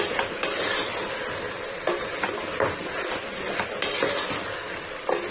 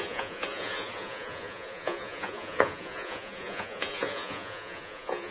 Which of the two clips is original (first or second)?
first